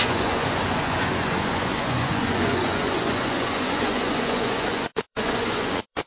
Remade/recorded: remade